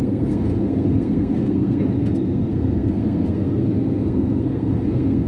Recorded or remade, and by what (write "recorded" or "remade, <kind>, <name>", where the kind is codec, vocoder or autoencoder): remade, codec, SNAC